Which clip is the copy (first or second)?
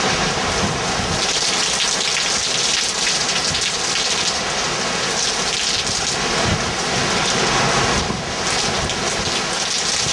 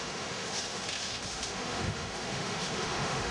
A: second